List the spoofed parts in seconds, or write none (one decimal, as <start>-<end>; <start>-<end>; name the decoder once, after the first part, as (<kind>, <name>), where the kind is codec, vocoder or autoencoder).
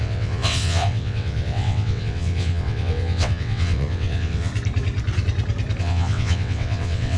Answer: 0.0-4.5 (vocoder, WaveNeXt); 5.8-7.2